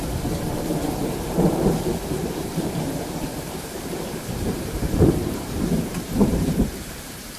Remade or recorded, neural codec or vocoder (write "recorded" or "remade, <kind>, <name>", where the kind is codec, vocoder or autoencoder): remade, vocoder, BigVGAN v2